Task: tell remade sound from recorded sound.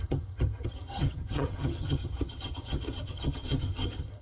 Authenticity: remade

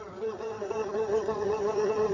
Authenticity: remade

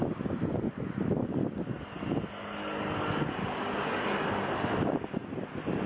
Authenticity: recorded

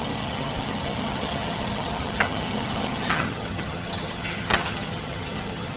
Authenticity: remade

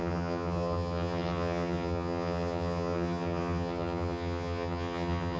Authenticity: remade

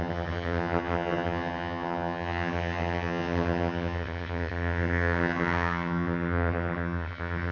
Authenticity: remade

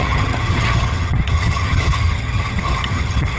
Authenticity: remade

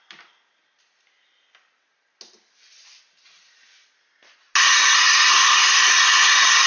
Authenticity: recorded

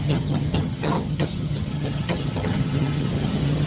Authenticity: remade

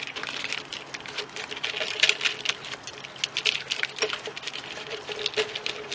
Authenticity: recorded